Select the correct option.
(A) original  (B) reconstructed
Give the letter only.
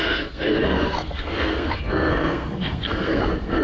B